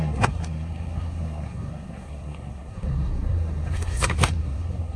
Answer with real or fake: fake